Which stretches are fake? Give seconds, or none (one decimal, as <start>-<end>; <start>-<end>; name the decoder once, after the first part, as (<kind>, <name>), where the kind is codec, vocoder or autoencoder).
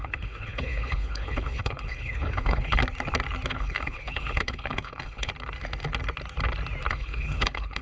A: 0.0-2.8 (codec, HILCodec); 3.5-5.3; 6.9-7.8